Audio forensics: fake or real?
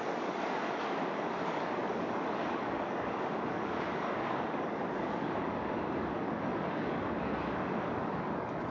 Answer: fake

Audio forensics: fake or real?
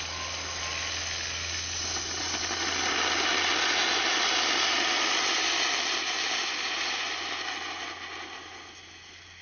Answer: real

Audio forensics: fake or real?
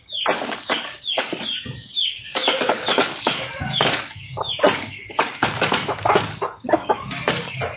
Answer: fake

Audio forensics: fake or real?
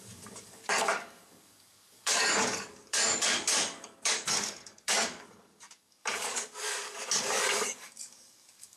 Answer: fake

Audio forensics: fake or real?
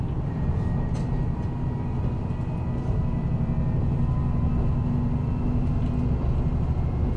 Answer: real